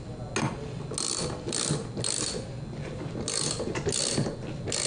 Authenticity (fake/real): real